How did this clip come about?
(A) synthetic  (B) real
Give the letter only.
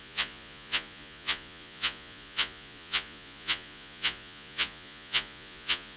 A